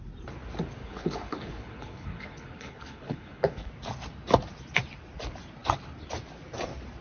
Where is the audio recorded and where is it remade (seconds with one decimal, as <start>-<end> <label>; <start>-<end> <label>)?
0.0-0.8 recorded; 0.8-3.7 remade; 3.7-7.0 recorded